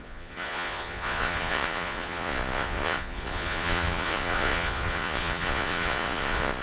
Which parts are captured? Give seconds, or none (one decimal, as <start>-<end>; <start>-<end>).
none